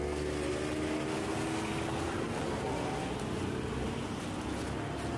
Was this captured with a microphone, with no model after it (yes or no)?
yes